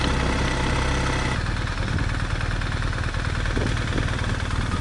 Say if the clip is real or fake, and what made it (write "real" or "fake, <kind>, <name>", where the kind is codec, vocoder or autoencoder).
real